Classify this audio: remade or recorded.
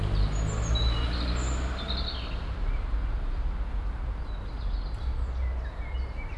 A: recorded